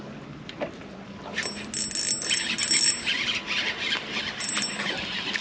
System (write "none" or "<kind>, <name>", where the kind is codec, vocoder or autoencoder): none